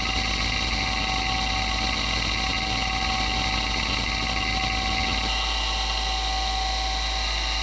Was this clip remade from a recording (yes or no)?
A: no